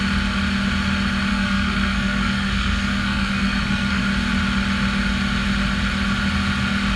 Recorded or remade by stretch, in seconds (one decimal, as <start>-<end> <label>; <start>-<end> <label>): 0.0-1.3 recorded; 1.3-4.0 remade; 4.0-7.0 recorded